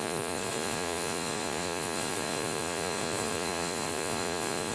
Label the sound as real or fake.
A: fake